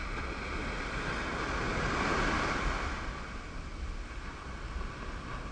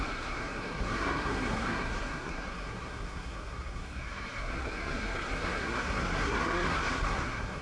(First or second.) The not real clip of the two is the second